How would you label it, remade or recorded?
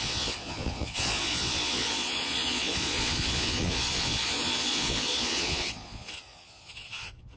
remade